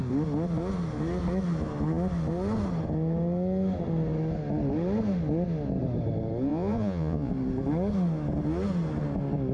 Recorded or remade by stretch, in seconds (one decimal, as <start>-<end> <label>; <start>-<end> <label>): 0.0-6.5 recorded; 6.5-7.3 remade; 7.3-9.5 recorded